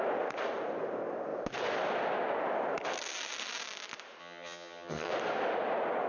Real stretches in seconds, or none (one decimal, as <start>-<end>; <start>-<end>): 0.0-4.2; 5.1-6.1